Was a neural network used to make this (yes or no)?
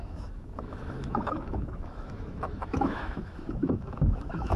yes